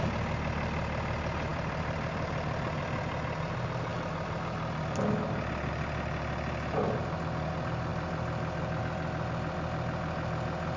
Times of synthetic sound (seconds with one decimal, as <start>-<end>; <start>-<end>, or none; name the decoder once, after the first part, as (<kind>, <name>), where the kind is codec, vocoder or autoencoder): 1.5-2.8 (vocoder, BigVGAN v2); 7.9-8.8